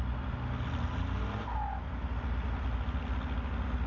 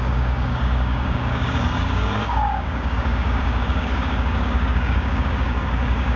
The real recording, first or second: first